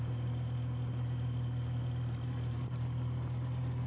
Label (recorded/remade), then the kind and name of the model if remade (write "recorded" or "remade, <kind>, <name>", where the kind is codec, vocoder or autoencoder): recorded